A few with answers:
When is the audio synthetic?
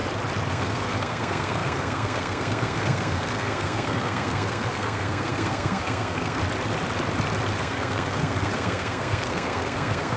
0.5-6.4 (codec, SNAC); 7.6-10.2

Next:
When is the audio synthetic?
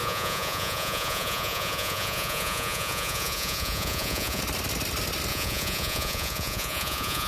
0.0-4.4 (vocoder, Vocos); 5.3-7.3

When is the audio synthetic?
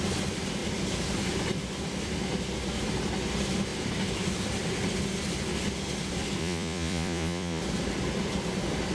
6.4-7.6 (vocoder, Vocos)